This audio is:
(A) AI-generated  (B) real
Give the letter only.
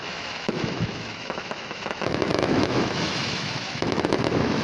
A